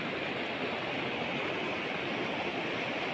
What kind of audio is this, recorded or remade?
recorded